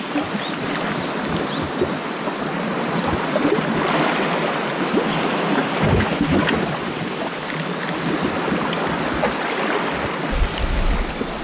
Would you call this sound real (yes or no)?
yes